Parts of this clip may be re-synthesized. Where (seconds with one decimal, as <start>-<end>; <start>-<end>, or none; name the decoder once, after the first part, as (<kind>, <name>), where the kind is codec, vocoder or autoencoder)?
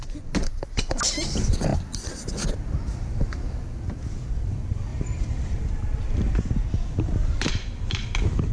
4.9-7.5 (vocoder, BigVGAN v2)